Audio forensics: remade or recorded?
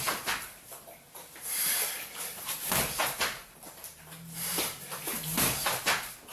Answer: remade